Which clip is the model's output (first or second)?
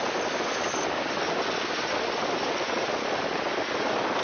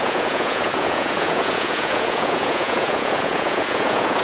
second